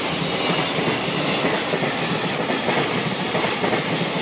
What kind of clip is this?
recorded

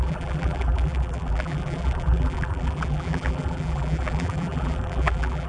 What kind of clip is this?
remade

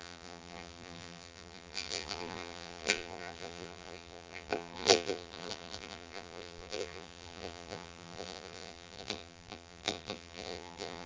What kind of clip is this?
remade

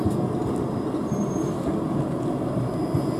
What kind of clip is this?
recorded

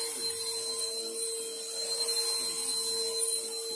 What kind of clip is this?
recorded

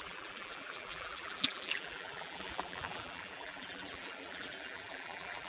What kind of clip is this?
remade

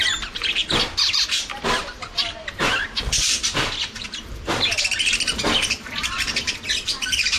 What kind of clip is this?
remade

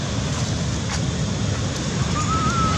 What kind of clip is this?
recorded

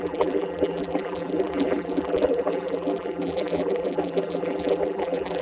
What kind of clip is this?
remade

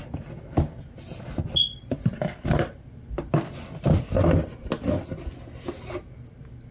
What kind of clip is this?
recorded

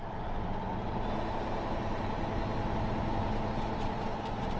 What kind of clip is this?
recorded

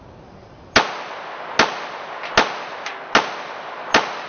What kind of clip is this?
recorded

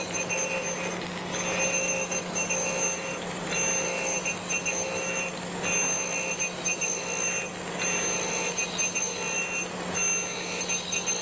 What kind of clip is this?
recorded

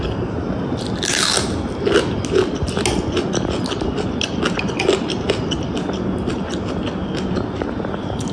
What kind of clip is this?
recorded